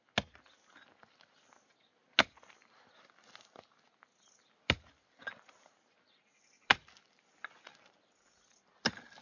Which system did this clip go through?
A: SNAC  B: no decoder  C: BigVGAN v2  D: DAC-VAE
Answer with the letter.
B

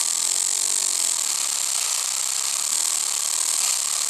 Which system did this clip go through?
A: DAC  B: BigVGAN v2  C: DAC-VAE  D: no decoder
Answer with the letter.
D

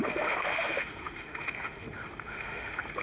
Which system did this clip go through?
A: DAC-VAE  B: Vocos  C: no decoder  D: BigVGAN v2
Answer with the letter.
A